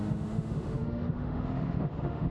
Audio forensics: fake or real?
fake